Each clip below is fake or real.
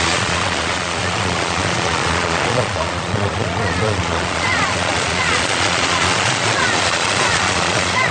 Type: fake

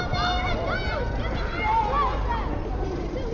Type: real